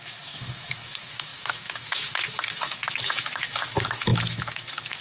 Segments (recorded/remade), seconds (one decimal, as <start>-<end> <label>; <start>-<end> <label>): 0.0-5.0 remade